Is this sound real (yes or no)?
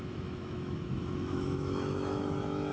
no